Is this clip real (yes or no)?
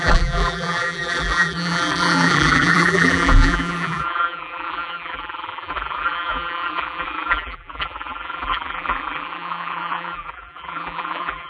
no